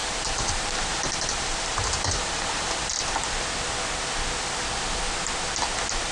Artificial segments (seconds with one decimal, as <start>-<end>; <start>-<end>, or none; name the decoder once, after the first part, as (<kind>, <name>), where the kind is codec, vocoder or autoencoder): 0.0-2.9 (vocoder, BigVGAN v2)